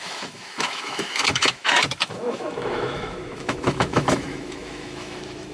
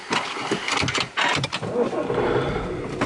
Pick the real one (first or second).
second